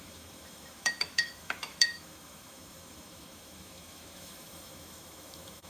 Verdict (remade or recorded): remade